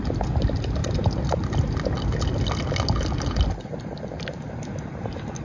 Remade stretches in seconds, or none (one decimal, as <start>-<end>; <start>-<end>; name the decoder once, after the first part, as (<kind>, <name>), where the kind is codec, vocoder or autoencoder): none